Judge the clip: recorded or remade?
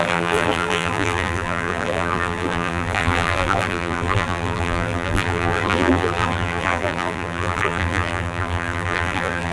remade